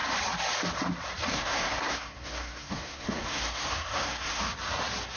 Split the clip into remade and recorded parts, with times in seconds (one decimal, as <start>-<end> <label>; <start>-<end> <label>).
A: 0.0-1.3 recorded; 1.3-4.4 remade; 4.4-5.2 recorded